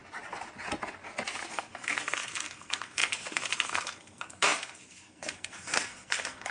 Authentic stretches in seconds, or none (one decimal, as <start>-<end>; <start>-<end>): 0.0-1.5